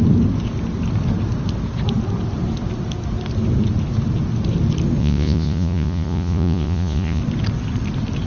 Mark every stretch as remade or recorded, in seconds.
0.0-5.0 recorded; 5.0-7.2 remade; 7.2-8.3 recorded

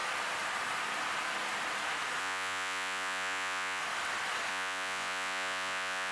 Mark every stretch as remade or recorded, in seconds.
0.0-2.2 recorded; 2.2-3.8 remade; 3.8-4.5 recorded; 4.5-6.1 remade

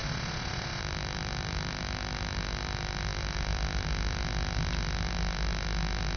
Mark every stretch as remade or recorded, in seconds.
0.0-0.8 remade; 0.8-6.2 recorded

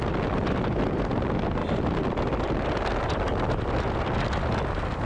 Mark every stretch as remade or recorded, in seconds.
0.0-5.1 recorded